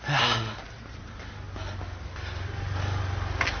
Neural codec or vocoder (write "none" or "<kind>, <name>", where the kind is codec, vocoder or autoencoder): none